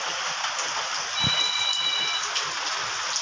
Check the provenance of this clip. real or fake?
real